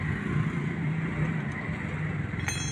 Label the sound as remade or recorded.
recorded